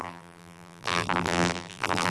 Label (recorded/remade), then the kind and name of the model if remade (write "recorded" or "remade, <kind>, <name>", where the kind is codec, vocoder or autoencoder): remade, vocoder, BigVGAN v2